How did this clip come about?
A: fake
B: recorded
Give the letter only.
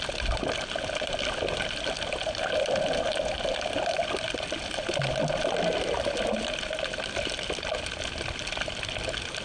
B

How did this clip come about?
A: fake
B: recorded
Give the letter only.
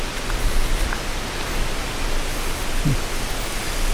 B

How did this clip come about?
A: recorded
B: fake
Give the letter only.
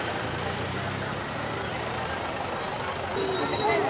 A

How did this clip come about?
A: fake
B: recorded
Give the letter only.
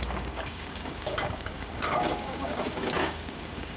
A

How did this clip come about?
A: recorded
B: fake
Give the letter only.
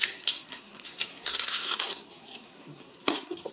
B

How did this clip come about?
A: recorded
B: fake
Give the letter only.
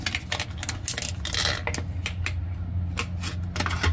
A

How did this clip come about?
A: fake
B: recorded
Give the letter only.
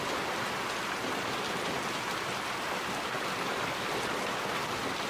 B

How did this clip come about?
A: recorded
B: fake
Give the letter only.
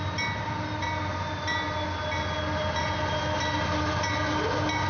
A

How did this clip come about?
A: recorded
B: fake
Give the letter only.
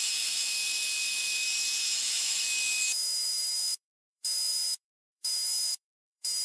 B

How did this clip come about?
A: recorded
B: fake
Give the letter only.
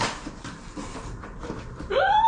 B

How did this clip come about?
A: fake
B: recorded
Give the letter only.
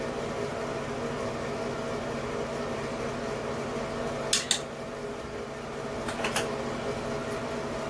B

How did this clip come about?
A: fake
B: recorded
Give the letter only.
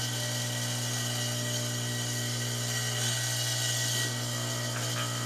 B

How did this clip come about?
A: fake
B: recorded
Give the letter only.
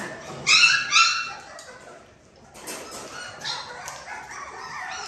B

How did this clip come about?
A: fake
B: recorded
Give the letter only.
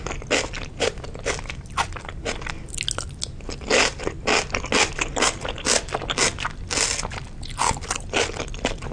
B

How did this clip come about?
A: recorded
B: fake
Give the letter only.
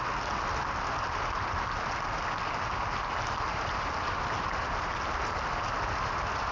A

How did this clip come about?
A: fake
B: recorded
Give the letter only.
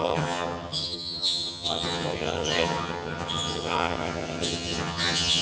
A